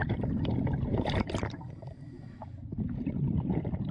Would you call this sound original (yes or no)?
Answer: no